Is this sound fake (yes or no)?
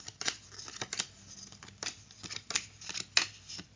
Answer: no